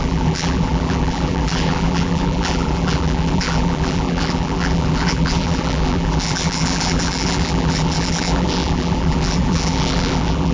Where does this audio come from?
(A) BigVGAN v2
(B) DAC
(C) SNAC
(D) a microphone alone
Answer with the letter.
A